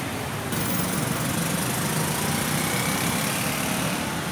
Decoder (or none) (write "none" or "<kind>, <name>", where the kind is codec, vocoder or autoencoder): none